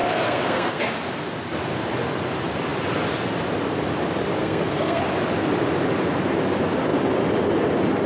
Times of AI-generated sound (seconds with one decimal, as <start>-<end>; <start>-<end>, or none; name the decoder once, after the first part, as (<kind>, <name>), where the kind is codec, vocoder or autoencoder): 0.0-0.8 (codec, SNAC); 4.4-5.0